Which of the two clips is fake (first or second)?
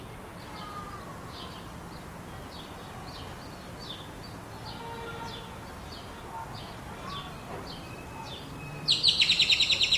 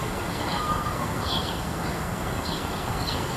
second